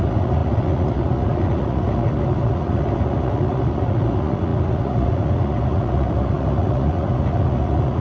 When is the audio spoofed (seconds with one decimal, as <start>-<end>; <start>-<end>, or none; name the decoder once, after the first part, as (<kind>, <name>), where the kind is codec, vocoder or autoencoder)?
0.0-8.0 (vocoder, Vocos)

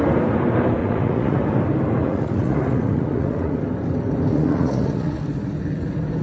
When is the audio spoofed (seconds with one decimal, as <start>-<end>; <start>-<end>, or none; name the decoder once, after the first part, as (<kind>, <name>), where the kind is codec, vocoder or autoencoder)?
0.8-1.4 (vocoder, Vocos); 2.0-3.6; 4.3-5.2